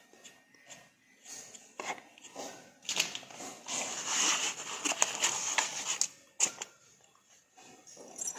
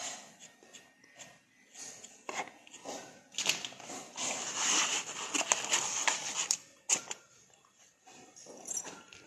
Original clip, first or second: first